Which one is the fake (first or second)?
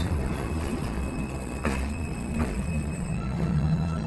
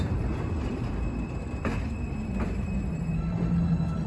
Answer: first